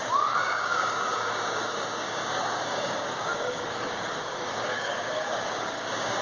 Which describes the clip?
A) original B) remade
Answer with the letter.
B